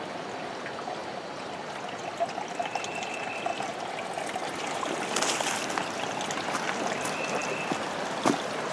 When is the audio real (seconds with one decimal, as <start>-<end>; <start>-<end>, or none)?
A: 0.0-8.7